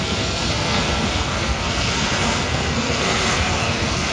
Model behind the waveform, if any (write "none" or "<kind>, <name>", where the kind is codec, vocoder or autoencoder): codec, SNAC